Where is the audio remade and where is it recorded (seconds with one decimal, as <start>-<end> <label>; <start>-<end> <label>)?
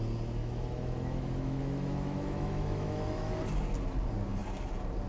0.0-0.4 recorded; 0.4-3.4 remade; 3.4-5.1 recorded